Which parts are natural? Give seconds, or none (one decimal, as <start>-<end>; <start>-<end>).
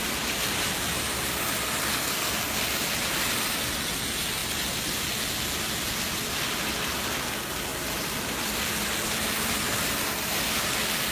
0.0-1.9; 2.5-11.1